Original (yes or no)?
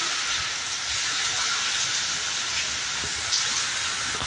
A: yes